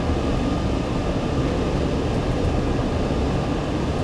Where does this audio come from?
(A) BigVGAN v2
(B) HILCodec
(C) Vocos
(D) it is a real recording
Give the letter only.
D